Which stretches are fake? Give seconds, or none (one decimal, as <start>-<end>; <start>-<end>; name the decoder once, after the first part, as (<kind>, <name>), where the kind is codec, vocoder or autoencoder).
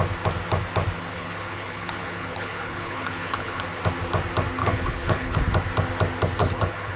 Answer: 1.1-3.6 (codec, HILCodec); 4.6-5.4; 6.4-7.0